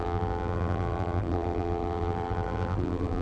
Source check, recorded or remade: remade